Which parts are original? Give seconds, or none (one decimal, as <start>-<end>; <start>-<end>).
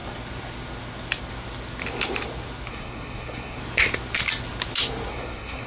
0.0-2.7; 3.6-5.1